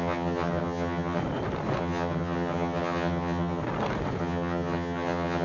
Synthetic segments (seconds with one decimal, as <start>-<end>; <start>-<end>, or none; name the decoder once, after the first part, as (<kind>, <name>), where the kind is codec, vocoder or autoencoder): 0.0-1.2 (vocoder, HiFi-GAN); 1.8-3.6; 4.2-5.4